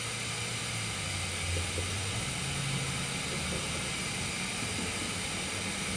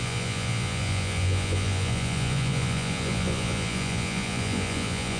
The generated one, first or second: second